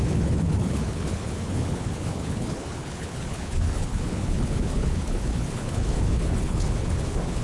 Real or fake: fake